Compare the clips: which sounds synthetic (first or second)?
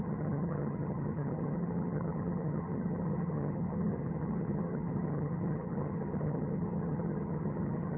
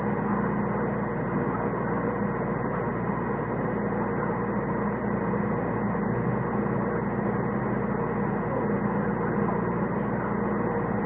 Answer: first